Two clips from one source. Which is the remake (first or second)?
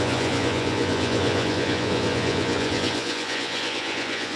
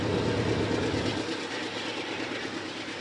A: first